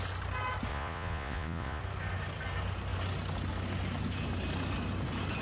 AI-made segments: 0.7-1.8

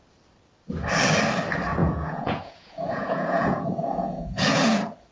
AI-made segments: 1.8-4.5

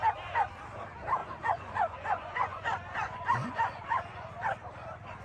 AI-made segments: 1.2-4.3

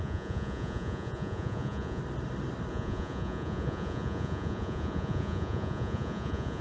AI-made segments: 0.0-2.0; 2.7-6.6